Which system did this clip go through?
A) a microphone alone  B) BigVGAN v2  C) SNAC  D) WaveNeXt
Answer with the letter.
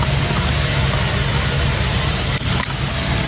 A